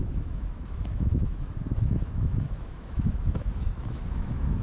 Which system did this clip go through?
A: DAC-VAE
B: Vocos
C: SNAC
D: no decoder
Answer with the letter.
A